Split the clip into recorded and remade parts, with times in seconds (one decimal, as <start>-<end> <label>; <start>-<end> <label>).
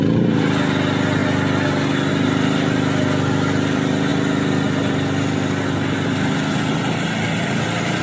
0.0-8.0 recorded